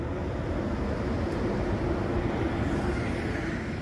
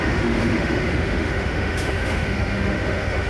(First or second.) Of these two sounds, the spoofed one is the second